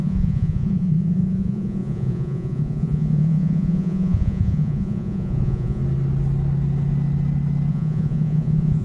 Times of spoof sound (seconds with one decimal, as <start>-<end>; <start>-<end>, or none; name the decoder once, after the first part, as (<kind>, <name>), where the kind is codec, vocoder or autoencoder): 0.0-5.8 (vocoder, Vocos); 7.7-8.8